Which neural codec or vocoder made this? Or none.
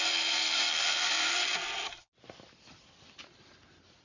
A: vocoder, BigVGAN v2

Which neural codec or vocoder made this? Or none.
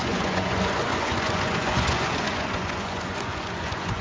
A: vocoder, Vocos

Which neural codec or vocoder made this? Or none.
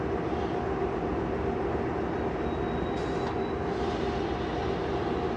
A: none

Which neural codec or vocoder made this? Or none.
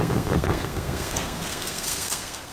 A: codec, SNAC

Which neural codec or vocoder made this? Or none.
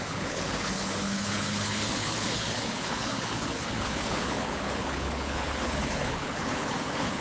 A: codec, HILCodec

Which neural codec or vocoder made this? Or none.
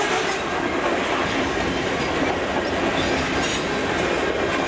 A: none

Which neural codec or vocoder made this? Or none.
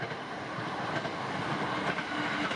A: none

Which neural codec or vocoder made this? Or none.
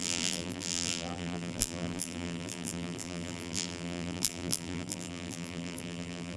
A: vocoder, BigVGAN v2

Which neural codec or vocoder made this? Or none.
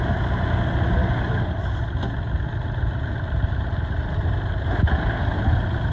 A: none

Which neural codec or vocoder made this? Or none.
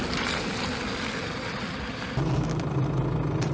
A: none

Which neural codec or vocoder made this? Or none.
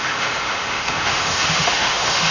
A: autoencoder, DAC-VAE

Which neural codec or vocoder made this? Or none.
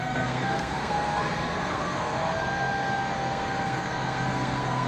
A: codec, SNAC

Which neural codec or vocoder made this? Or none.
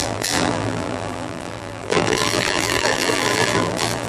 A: vocoder, BigVGAN v2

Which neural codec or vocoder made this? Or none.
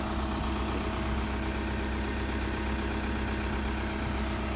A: none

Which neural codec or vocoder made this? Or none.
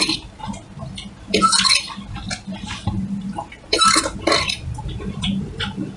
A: none